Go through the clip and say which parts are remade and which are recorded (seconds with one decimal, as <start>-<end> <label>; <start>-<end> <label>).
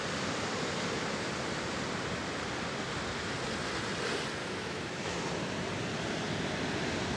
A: 0.0-4.4 recorded; 4.4-5.2 remade; 5.2-7.2 recorded